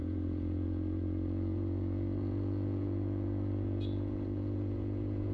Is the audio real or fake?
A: fake